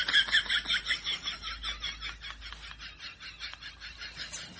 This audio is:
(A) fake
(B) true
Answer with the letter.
B